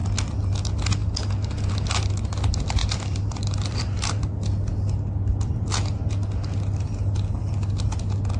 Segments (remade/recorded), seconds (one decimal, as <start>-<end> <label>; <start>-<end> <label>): 0.0-2.8 recorded; 2.8-4.2 remade; 4.2-5.3 recorded; 5.3-6.1 remade; 6.1-8.4 recorded